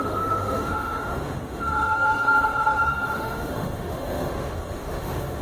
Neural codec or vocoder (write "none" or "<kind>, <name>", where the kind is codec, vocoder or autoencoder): autoencoder, DAC-VAE